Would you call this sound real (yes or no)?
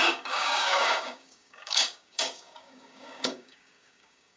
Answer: no